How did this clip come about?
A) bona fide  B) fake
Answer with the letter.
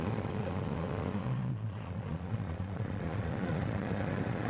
B